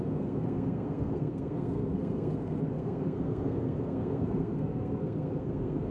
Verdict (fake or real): fake